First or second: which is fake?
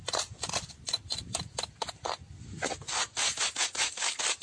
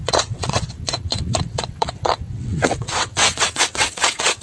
second